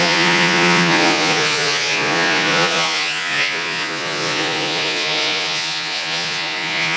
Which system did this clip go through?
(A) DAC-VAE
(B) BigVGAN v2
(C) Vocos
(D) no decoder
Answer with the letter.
C